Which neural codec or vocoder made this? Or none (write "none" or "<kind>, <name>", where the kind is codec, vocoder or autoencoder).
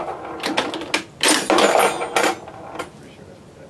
none